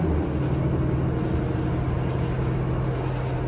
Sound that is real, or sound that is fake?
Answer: real